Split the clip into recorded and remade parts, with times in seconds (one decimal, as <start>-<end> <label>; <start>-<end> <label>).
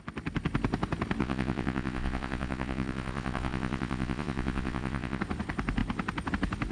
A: 0.0-1.2 recorded; 1.2-5.2 remade; 5.2-6.7 recorded